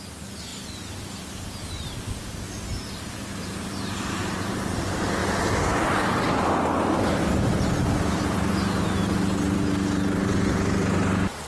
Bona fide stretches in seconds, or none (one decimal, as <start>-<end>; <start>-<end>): 0.0-11.5